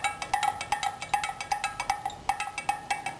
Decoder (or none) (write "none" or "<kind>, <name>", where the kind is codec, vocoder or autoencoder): none